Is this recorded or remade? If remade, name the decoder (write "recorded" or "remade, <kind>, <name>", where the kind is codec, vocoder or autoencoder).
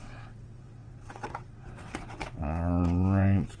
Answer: remade, vocoder, WaveNeXt